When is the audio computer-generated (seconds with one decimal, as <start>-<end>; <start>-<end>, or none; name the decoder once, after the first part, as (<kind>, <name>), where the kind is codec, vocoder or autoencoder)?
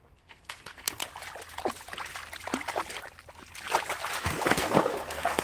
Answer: 0.0-1.0 (codec, SNAC); 4.2-5.4